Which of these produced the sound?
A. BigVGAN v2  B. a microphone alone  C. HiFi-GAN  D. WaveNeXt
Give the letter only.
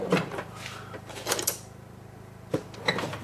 A